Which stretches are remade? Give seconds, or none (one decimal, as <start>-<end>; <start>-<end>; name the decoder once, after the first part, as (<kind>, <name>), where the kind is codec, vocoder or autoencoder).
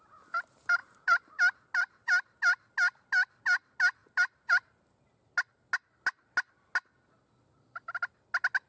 0.8-1.4 (vocoder, BigVGAN v2); 4.0-4.8